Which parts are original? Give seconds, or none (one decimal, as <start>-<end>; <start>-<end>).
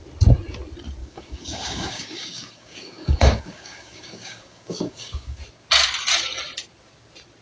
0.0-1.0; 5.4-7.4